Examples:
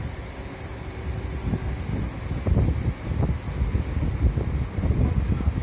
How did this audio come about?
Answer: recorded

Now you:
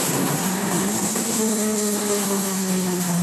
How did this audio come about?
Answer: remade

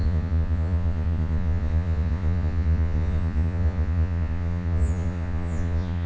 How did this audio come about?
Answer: remade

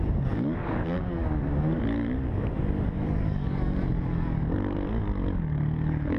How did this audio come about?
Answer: remade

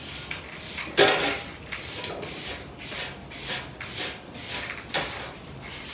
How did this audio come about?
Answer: recorded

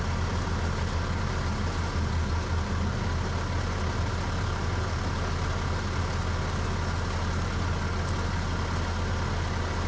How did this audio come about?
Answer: recorded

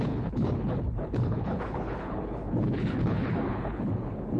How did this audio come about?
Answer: remade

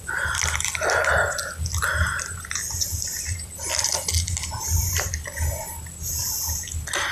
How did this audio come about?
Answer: recorded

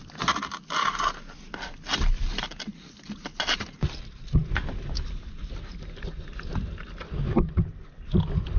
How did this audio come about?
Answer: recorded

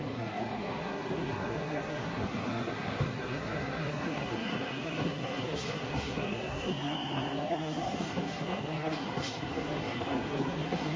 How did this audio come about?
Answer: remade